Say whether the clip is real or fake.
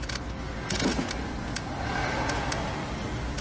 real